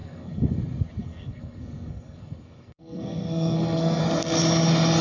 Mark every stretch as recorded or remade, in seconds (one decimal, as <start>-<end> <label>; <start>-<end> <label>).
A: 0.0-0.6 remade; 0.6-1.0 recorded; 1.0-4.0 remade; 4.0-5.0 recorded